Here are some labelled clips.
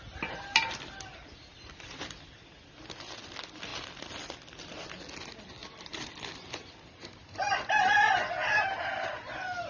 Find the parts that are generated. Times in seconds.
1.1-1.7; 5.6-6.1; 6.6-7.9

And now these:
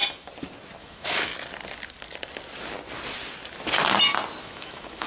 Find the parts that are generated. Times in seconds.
0.8-1.3; 4.4-5.1